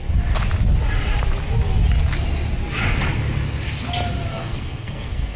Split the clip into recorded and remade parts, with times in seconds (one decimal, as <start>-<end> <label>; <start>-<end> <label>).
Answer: 0.0-4.3 recorded; 4.3-5.4 remade